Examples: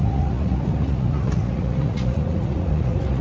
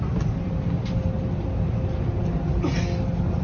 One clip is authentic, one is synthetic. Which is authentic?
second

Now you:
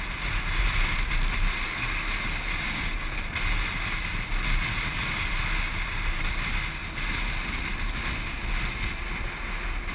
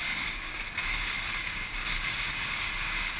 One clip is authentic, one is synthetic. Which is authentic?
first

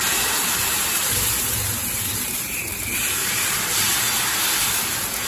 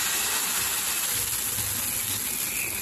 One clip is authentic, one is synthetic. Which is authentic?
second